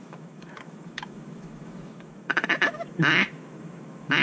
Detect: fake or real fake